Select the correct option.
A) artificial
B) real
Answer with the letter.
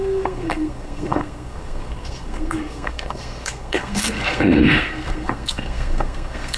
A